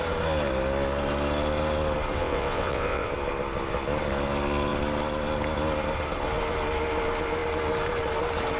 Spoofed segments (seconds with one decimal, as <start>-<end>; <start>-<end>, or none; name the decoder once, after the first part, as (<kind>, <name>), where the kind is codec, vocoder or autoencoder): 2.2-3.1 (vocoder, WaveNeXt)